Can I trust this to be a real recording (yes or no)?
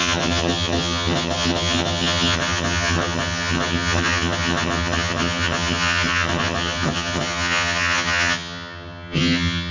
no